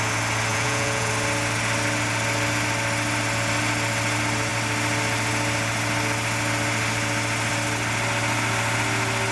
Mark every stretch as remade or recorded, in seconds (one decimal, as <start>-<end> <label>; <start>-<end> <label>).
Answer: 0.0-0.5 recorded; 0.5-1.1 remade; 1.1-9.3 recorded